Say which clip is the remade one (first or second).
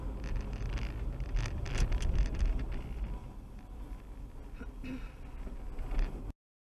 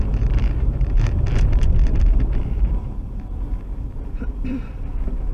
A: second